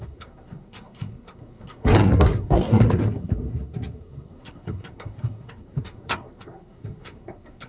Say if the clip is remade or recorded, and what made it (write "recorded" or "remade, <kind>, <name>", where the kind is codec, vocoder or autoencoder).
remade, codec, SNAC